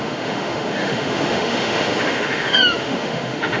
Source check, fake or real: fake